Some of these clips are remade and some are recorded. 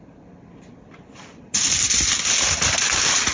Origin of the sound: remade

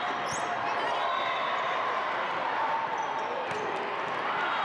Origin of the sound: recorded